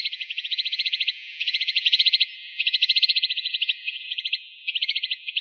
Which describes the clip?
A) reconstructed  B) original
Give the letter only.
A